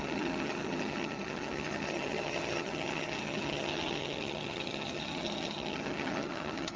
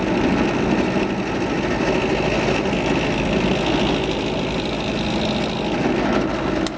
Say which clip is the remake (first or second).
first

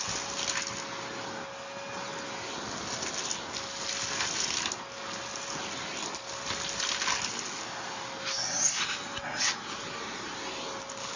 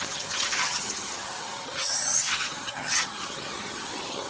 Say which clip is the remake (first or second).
second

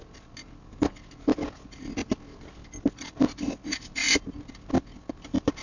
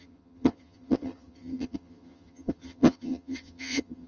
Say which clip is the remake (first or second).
second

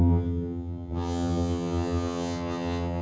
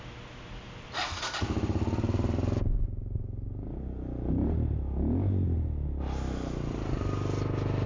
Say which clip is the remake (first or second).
first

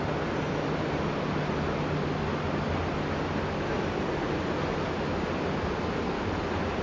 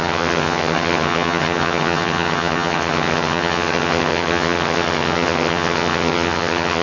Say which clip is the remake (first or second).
second